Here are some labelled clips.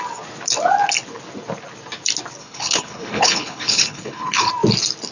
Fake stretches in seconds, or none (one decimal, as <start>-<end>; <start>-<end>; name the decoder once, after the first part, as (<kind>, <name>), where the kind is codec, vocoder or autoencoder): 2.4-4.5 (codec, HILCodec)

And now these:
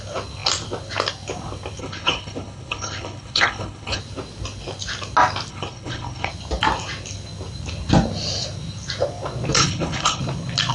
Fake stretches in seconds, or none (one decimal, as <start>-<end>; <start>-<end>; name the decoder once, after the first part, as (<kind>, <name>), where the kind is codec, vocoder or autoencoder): 1.8-4.0 (codec, HILCodec); 5.5-6.3; 9.6-10.2

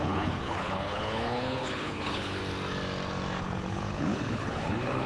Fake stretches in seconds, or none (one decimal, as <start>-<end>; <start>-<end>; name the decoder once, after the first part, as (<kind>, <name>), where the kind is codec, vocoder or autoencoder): 0.0-2.4 (codec, HILCodec); 3.4-5.1

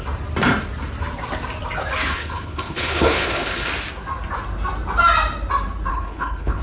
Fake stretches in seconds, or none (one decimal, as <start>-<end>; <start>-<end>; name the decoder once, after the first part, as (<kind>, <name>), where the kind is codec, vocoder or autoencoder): 2.1-3.7 (codec, HILCodec); 5.9-6.6